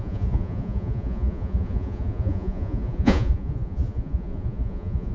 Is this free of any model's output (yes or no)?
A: no